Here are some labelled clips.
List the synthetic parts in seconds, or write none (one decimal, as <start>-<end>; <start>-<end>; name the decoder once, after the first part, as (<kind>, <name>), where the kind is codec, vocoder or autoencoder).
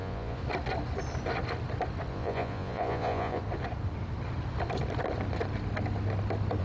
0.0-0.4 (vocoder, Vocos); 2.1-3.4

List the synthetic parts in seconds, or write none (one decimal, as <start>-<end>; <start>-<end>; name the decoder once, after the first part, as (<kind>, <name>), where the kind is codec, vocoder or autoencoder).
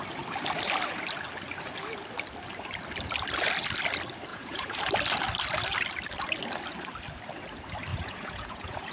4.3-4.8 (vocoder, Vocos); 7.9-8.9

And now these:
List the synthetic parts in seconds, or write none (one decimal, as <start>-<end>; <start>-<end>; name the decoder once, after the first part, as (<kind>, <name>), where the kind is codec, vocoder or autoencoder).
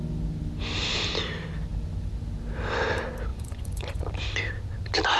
3.3-4.1 (vocoder, Vocos)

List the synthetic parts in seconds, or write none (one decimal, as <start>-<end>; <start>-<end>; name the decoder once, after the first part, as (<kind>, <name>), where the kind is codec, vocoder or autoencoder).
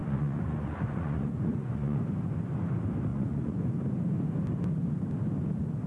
0.0-2.0 (vocoder, Vocos); 3.1-3.6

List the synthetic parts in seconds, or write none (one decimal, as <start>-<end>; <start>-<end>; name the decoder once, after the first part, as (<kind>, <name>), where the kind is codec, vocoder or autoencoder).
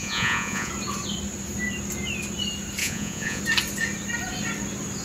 0.0-0.7 (vocoder, Vocos); 2.8-3.4